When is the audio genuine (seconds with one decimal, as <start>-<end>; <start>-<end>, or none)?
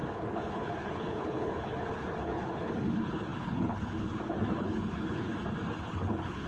5.3-5.8